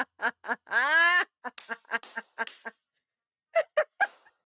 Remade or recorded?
recorded